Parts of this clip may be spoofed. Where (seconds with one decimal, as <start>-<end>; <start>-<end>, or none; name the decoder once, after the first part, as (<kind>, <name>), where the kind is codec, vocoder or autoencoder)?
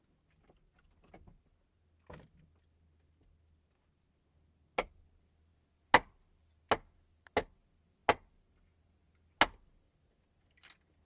none